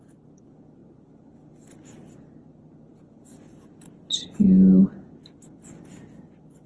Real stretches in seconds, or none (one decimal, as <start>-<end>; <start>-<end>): 0.0-6.7